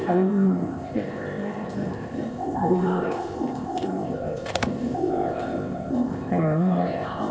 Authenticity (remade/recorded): remade